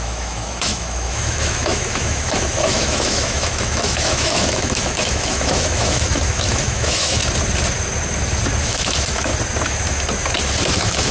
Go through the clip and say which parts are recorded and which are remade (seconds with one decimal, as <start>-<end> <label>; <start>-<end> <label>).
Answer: 0.0-7.2 remade; 7.2-8.6 recorded; 8.6-9.3 remade; 9.3-10.7 recorded; 10.7-11.1 remade